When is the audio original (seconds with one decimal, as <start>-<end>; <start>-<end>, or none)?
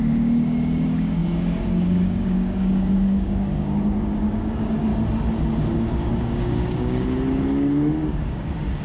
4.9-5.6